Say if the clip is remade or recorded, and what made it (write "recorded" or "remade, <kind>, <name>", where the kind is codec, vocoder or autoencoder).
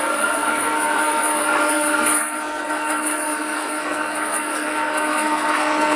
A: remade, codec, SNAC